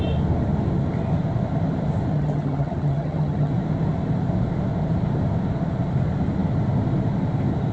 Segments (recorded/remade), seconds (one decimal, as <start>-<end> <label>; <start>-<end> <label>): 0.0-2.1 recorded; 2.1-3.5 remade; 3.5-7.7 recorded